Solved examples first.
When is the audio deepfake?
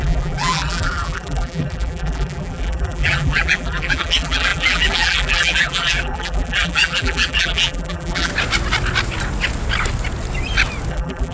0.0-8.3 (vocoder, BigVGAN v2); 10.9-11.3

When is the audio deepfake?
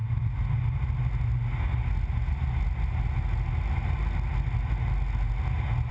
none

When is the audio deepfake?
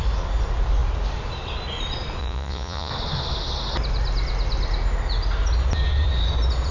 2.2-2.9 (vocoder, Vocos)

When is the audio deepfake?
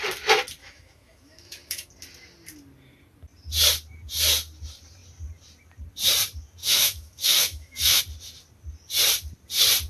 0.6-1.9 (autoencoder, DAC-VAE); 6.6-8.0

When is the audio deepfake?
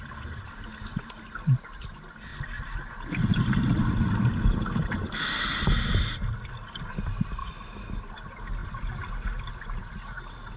7.4-8.0 (autoencoder, DAC-VAE)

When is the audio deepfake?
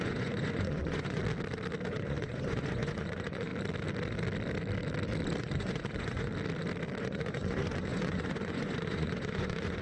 0.0-1.2 (vocoder, Vocos); 1.9-3.5; 5.4-6.3; 7.0-9.8